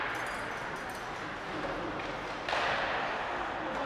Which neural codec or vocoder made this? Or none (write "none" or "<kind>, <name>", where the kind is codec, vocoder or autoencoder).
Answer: none